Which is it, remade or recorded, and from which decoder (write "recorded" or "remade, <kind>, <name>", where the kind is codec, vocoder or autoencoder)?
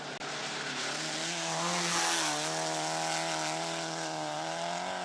recorded